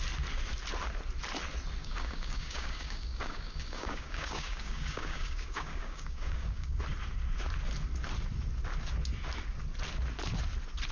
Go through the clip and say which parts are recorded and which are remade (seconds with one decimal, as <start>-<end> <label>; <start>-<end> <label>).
0.0-1.8 recorded; 1.8-6.8 remade; 6.8-10.9 recorded